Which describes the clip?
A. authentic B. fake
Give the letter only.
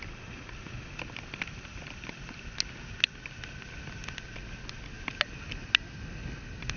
A